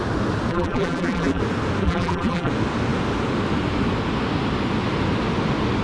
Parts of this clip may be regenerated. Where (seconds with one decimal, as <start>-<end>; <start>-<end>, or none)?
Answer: 0.5-1.4; 1.8-2.5